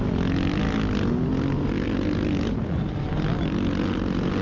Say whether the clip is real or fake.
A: real